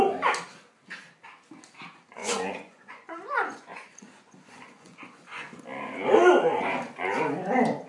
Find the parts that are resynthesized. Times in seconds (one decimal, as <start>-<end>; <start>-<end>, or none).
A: 2.2-5.6